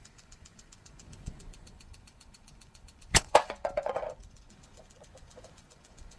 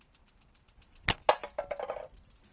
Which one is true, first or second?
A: second